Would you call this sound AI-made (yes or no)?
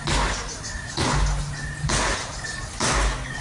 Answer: no